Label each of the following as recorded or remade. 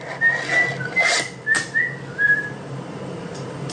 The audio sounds recorded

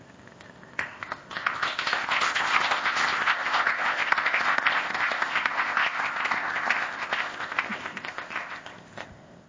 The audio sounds remade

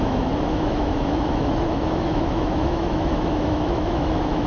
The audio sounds remade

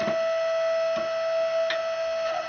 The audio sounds recorded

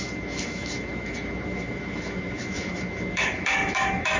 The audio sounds remade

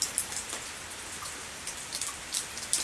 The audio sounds recorded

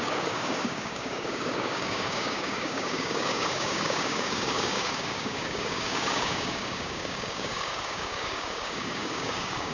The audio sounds remade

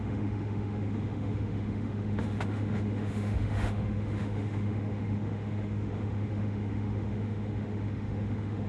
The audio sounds remade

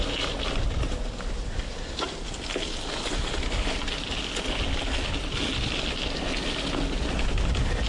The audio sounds recorded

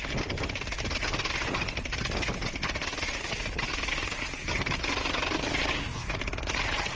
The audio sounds recorded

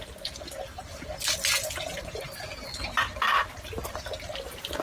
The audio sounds recorded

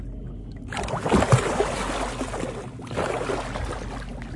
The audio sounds recorded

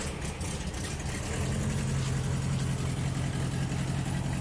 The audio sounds recorded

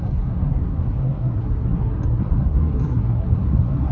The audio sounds remade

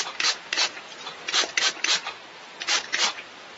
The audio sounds remade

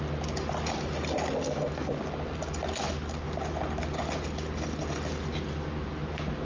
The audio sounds recorded